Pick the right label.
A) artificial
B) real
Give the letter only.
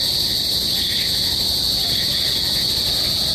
B